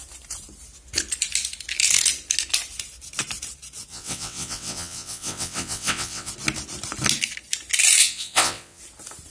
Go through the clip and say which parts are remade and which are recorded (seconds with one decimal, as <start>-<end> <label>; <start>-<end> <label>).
0.0-3.9 recorded; 3.9-6.3 remade; 6.3-8.0 recorded; 8.0-8.8 remade; 8.8-9.3 recorded